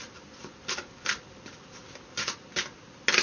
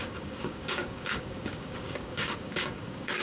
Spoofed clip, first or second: second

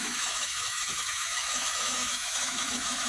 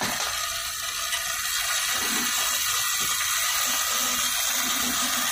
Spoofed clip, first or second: first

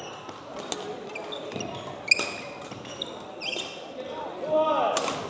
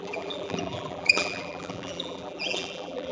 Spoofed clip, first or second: second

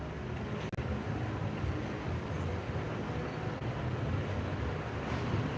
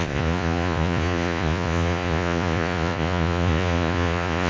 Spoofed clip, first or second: second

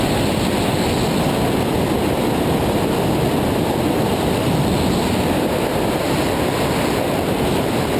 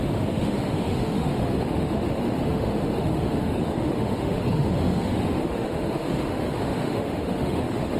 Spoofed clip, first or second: second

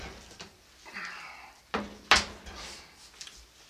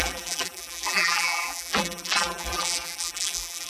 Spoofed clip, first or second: second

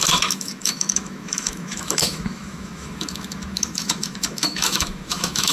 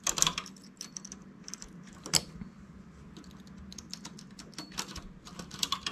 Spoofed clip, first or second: first